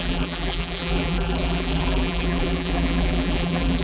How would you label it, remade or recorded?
remade